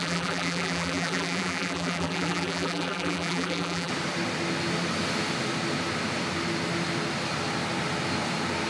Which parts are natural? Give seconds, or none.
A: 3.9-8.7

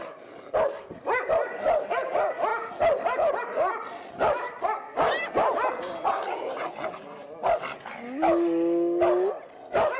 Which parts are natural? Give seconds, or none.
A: 0.0-10.0

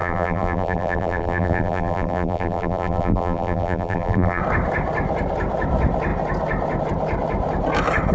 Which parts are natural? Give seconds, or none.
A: 4.4-8.1

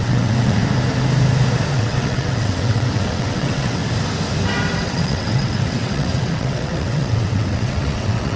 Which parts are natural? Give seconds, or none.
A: 0.6-1.7; 3.8-4.8

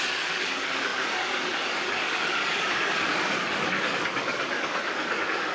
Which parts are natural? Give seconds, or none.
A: none

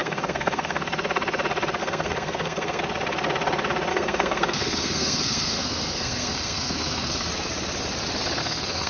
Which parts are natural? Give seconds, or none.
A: 0.8-1.8; 2.8-3.9; 7.3-8.4

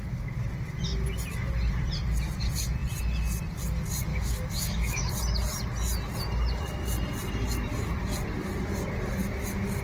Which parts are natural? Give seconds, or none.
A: 0.0-4.1; 5.1-9.8

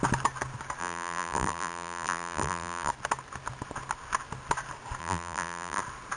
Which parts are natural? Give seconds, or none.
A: 0.0-0.8; 2.9-5.0; 5.8-6.2